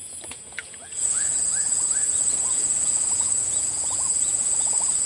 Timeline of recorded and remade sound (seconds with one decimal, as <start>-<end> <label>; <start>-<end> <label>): 0.0-5.1 remade